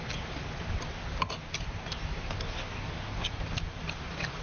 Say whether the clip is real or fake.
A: real